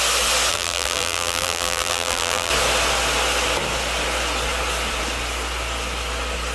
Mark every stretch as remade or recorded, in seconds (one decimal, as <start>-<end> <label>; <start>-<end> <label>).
0.0-0.5 recorded; 0.5-2.5 remade; 2.5-6.5 recorded